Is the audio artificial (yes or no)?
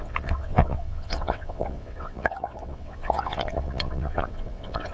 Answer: yes